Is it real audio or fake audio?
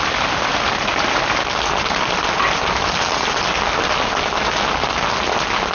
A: real